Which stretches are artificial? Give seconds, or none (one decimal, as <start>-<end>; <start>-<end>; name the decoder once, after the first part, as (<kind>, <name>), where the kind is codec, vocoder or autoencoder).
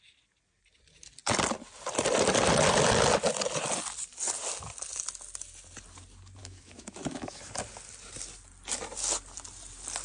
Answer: 6.4-7.5 (autoencoder, DAC-VAE)